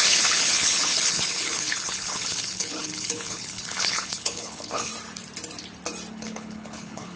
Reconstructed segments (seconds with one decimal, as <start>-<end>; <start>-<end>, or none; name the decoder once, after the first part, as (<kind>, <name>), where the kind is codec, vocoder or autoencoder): 0.0-4.9 (codec, HILCodec); 6.1-7.2